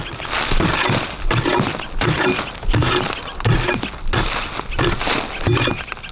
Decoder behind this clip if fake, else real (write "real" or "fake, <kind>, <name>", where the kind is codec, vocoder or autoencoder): real